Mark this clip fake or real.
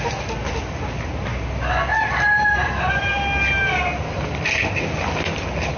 fake